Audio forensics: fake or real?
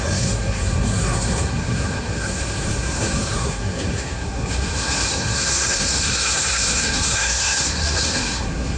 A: fake